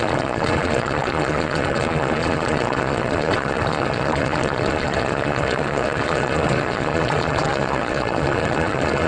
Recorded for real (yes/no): no